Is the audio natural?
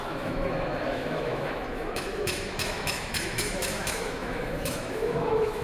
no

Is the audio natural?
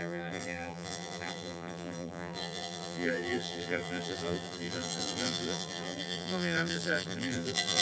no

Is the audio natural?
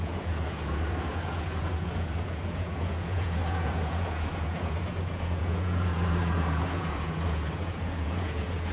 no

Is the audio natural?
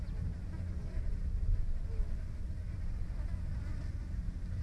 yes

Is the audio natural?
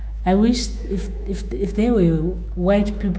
no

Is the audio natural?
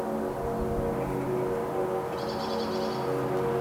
yes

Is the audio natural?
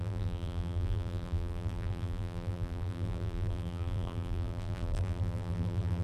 no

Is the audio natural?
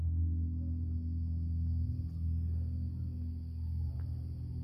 yes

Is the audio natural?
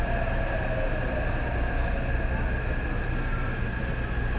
yes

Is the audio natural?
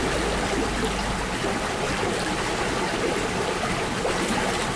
yes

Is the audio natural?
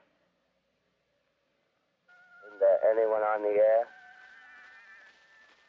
yes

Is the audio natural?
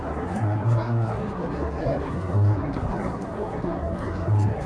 no